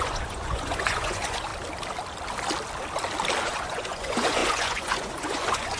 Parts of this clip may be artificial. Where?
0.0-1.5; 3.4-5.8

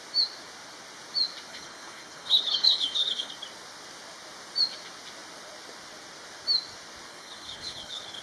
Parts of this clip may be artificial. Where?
1.5-3.3; 7.1-8.2

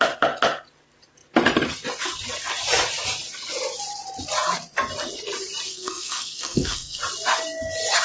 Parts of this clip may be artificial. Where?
5.7-7.0

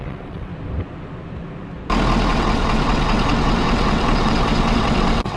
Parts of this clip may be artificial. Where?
0.0-0.5; 2.3-5.4

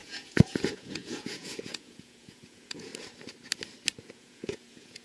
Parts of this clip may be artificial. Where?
0.0-2.9; 4.0-5.0

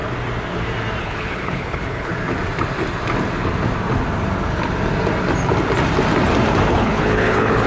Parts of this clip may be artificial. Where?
1.0-2.1; 6.7-7.7